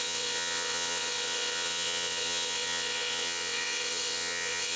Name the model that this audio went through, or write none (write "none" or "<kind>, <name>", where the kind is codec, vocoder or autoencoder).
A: vocoder, WaveNeXt